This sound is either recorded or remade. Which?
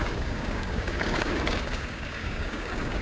remade